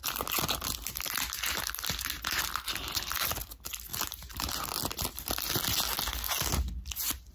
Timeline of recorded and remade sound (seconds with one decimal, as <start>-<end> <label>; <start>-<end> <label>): 0.0-3.9 recorded; 3.9-4.5 remade; 4.5-7.3 recorded